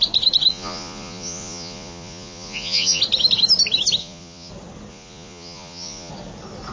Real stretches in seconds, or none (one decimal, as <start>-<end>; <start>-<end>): 0.0-0.5; 3.0-4.0; 4.5-4.9; 6.1-6.7